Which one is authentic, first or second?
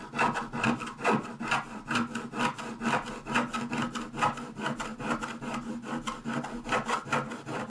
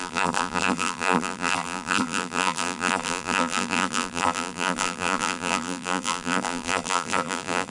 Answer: first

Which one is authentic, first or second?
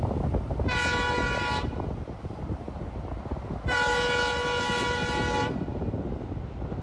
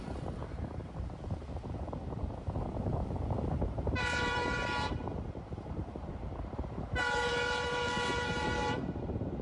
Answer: first